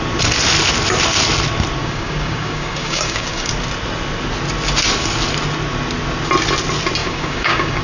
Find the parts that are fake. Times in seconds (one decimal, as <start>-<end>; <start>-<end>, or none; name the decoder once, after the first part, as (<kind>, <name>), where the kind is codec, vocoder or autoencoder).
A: 1.8-3.5 (codec, DAC); 7.0-7.8